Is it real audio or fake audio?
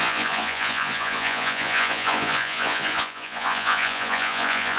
fake